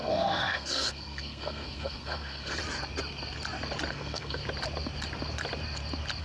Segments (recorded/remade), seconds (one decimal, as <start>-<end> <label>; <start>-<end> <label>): 0.0-2.6 remade; 2.6-3.9 recorded; 3.9-4.4 remade; 4.4-6.2 recorded